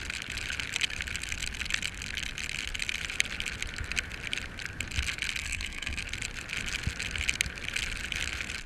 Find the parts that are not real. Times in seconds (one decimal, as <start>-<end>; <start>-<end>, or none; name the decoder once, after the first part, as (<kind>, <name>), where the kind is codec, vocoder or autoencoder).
5.4-6.0 (codec, SNAC)